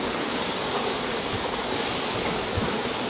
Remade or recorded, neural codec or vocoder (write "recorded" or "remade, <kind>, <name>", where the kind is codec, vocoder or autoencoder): remade, codec, DAC